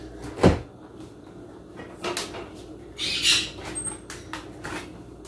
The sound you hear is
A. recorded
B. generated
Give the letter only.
A